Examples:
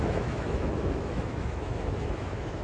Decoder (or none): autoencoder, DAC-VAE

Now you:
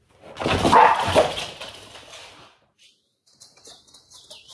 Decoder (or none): none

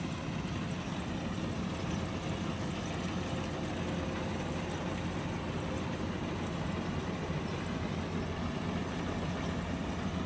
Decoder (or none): none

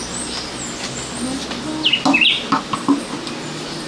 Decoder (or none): none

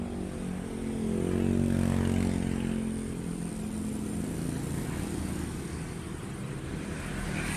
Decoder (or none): none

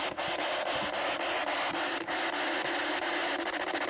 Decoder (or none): none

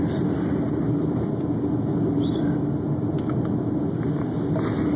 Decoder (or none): none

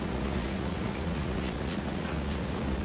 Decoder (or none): vocoder, Vocos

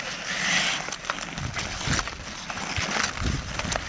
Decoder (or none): none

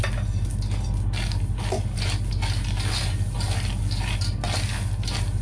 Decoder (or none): none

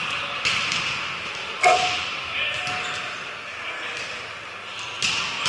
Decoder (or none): none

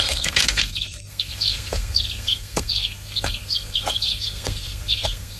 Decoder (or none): codec, SNAC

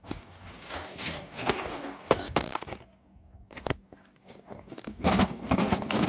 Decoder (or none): codec, DAC